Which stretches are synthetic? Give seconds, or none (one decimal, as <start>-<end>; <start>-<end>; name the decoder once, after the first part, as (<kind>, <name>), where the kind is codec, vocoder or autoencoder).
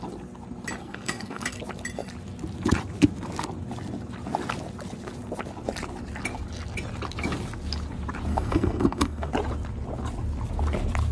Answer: 0.8-1.6 (codec, SNAC); 8.3-9.3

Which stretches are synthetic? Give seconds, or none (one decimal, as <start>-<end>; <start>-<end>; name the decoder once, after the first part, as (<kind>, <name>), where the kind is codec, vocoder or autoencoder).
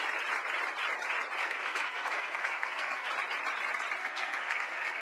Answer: 1.4-3.1 (codec, SNAC); 4.0-5.0